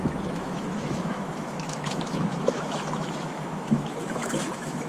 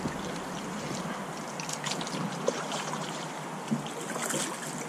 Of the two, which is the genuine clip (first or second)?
second